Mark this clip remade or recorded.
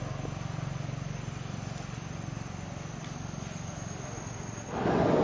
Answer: recorded